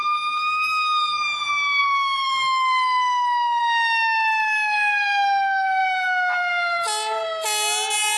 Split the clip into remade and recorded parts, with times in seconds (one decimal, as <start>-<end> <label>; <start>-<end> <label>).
0.0-1.2 remade; 1.2-1.8 recorded; 1.8-3.6 remade; 3.6-4.4 recorded; 4.4-5.8 remade; 5.8-8.2 recorded